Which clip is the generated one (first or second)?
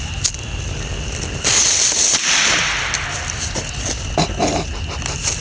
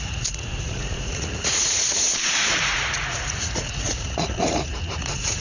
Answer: second